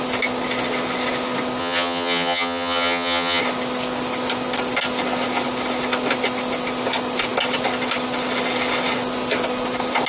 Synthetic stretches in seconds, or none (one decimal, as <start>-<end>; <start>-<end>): 1.6-3.4